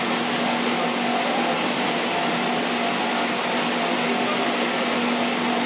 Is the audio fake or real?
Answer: real